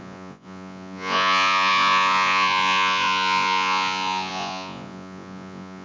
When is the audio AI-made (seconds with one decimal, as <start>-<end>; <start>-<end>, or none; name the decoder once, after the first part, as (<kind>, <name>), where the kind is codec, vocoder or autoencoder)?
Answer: 0.0-5.8 (vocoder, Vocos)